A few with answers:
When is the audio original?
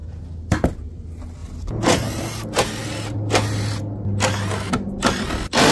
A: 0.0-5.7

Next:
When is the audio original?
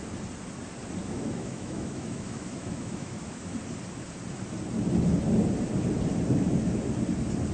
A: 0.0-1.0; 3.6-7.5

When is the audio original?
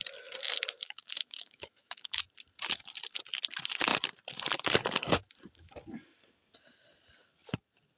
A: 0.0-0.8; 2.2-8.0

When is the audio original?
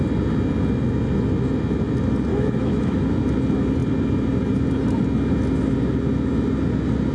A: 0.0-2.3; 3.1-7.1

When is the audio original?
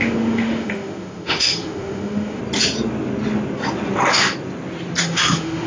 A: 2.4-5.0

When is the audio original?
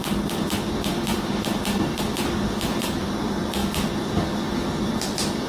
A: 0.0-5.5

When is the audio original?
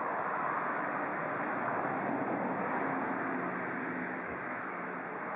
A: 1.1-3.9